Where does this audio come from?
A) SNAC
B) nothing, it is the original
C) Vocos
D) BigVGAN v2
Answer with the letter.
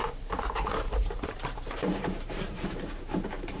D